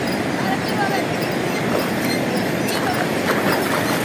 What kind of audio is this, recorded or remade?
recorded